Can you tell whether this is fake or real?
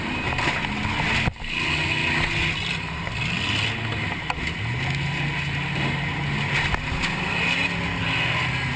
real